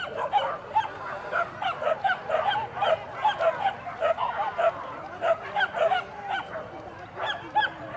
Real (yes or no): yes